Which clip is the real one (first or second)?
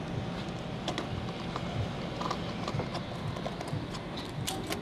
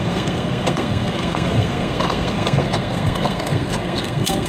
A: first